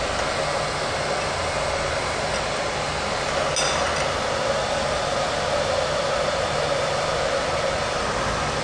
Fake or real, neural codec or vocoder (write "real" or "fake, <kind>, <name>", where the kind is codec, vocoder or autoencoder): real